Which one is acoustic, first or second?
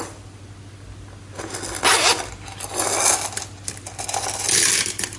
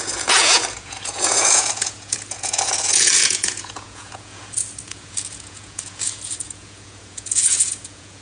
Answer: first